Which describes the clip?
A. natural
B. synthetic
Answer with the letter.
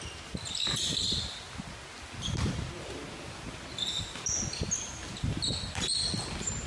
A